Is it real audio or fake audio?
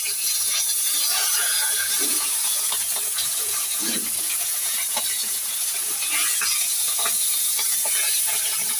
fake